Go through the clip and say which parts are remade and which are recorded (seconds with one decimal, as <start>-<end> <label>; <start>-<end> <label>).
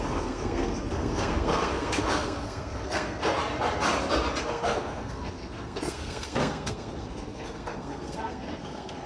0.0-3.4 remade; 3.4-4.4 recorded; 4.4-9.1 remade